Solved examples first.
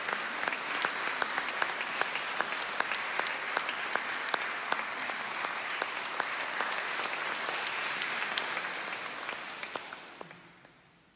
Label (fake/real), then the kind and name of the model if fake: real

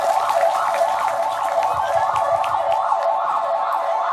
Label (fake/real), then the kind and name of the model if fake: real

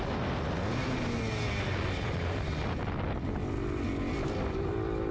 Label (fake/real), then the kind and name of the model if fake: real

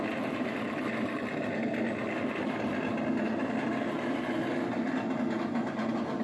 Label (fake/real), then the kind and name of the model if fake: real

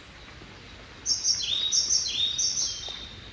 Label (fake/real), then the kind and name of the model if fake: real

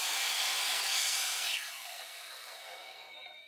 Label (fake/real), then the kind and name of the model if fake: fake, codec, SNAC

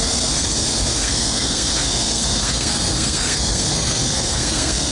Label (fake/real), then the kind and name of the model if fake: fake, codec, SNAC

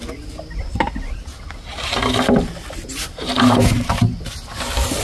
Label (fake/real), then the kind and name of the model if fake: real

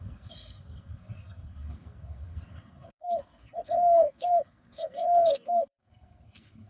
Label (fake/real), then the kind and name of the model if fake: fake, codec, SNAC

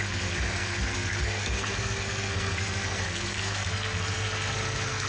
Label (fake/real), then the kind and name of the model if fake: fake, codec, SNAC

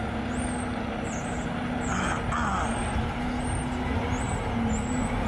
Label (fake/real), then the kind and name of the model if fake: real